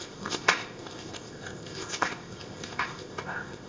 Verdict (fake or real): fake